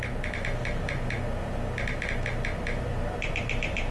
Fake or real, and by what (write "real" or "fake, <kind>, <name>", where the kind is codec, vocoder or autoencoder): real